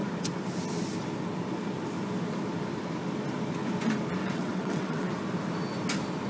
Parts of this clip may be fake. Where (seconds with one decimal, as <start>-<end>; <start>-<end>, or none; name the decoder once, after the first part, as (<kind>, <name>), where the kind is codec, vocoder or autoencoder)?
4.2-5.1 (vocoder, WaveNeXt)